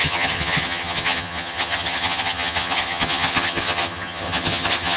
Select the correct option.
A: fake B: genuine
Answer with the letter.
A